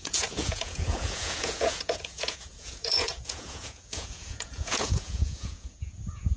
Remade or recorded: remade